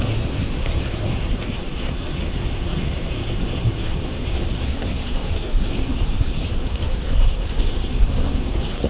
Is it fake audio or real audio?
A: fake